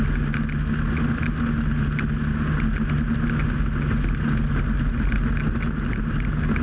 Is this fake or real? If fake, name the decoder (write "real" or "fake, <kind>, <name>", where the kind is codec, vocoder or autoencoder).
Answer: real